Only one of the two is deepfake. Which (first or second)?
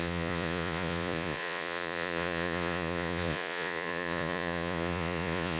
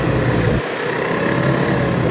first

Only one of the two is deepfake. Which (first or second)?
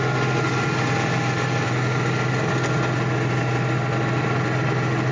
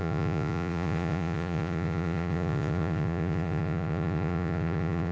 second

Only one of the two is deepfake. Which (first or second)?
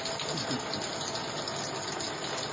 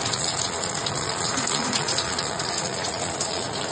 second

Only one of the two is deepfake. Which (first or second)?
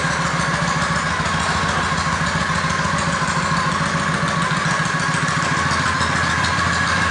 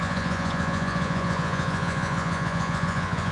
second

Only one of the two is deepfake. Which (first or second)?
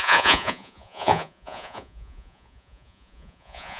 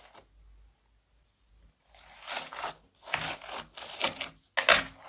first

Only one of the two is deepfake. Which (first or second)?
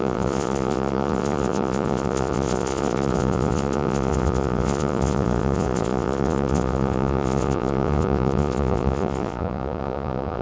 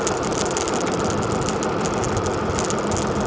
first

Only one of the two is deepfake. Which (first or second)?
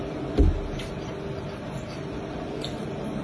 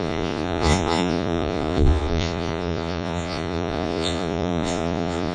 second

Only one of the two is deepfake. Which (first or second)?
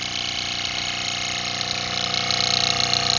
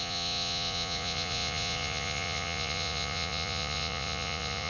second